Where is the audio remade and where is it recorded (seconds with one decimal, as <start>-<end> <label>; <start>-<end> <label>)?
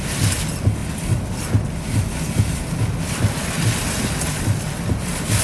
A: 0.0-5.4 recorded